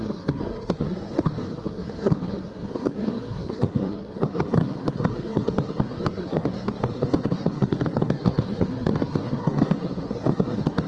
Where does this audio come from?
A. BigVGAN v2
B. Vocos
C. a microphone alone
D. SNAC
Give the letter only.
D